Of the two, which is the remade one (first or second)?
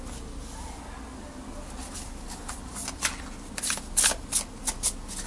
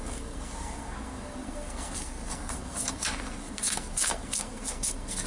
second